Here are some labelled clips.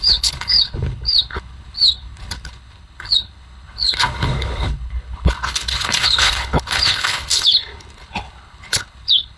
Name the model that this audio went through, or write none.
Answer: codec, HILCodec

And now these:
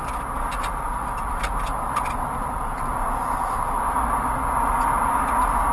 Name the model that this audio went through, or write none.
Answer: none